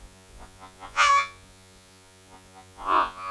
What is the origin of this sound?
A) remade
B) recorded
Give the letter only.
A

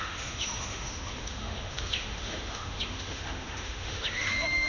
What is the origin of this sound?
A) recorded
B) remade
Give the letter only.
B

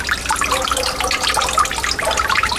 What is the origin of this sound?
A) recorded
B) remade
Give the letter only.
A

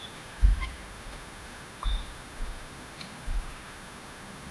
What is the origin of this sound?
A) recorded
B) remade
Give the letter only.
B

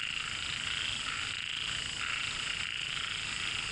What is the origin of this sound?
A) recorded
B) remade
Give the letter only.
A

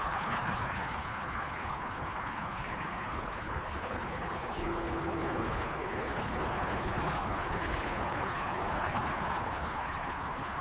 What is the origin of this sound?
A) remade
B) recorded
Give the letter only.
A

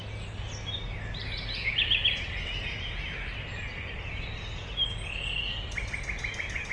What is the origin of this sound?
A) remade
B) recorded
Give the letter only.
B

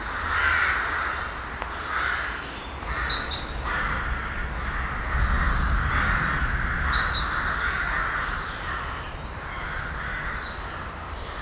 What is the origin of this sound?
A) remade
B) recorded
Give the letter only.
B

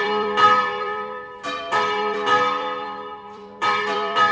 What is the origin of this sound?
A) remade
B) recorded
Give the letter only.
A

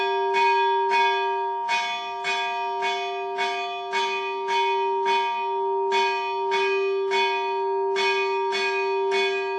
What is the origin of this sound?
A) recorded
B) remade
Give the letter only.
A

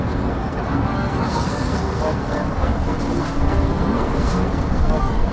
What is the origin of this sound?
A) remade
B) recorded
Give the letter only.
A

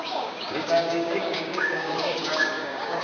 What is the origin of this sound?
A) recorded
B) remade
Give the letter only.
B